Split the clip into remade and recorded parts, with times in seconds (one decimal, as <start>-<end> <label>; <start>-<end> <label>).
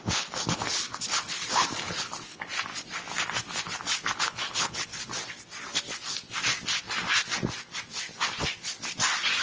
0.0-2.7 remade; 2.7-4.2 recorded; 4.2-4.9 remade; 4.9-9.4 recorded